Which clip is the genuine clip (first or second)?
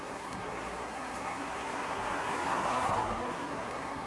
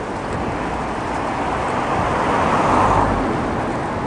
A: second